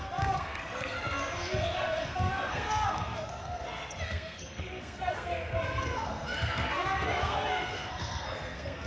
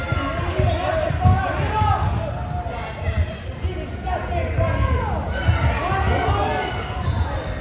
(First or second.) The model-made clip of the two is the first